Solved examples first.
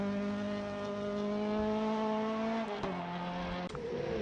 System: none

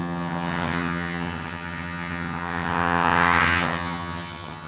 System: vocoder, HiFi-GAN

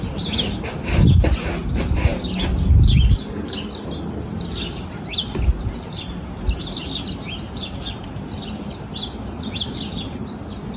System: none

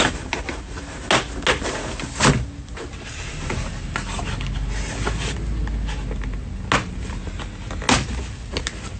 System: none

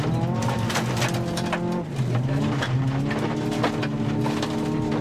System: none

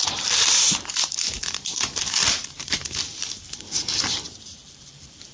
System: vocoder, BigVGAN v2